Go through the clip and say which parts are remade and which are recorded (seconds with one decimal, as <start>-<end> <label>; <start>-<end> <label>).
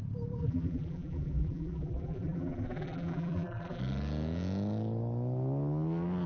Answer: 0.0-0.4 recorded; 0.4-3.8 remade; 3.8-6.3 recorded